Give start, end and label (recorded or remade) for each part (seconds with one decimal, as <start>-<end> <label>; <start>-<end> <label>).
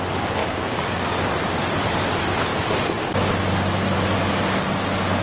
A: 0.0-0.4 recorded; 0.4-1.2 remade; 1.2-5.2 recorded